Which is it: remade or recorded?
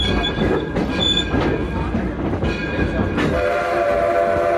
recorded